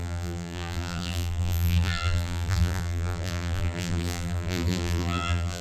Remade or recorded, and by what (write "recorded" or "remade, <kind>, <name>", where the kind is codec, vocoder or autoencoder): remade, vocoder, BigVGAN v2